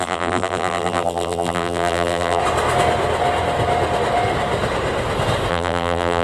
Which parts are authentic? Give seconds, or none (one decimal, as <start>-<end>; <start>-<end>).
2.4-5.5